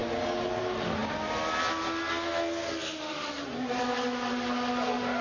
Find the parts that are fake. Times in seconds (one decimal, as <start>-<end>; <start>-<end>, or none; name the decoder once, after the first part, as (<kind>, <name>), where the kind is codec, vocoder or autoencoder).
none